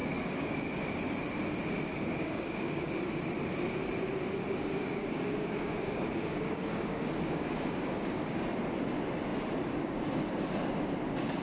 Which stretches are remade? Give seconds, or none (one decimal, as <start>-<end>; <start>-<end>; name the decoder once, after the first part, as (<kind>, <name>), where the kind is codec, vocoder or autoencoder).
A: 0.0-0.5 (codec, DAC); 1.9-2.9; 4.4-8.5